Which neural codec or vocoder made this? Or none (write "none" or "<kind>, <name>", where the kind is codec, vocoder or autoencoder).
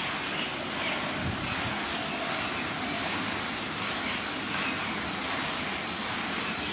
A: none